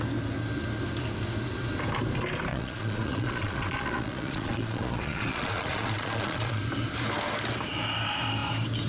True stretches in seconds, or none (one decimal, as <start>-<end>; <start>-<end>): 0.0-2.5; 6.6-8.9